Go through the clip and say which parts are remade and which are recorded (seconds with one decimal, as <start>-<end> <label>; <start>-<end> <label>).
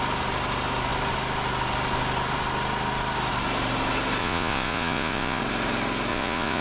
0.0-4.2 recorded; 4.2-5.4 remade; 5.4-6.1 recorded; 6.1-6.6 remade